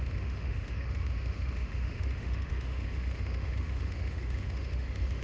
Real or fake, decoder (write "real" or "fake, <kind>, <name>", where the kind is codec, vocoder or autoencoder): fake, autoencoder, DAC-VAE